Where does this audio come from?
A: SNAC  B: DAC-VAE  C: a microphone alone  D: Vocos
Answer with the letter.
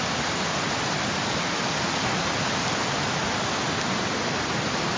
C